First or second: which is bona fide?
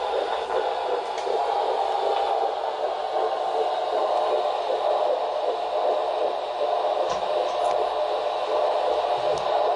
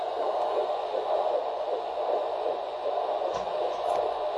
first